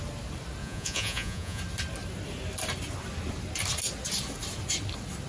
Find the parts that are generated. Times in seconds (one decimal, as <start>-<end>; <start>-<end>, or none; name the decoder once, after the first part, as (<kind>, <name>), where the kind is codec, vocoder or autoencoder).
0.6-1.6 (vocoder, Vocos)